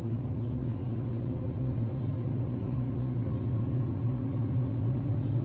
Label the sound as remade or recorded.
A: remade